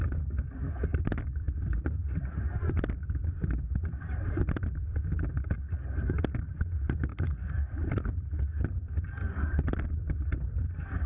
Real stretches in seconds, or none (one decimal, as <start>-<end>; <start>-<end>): 0.0-0.9; 4.3-7.1